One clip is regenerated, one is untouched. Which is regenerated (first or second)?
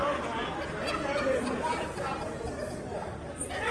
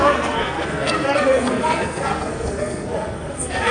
second